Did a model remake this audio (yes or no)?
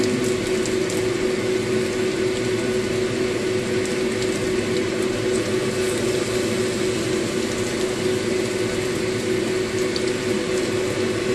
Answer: no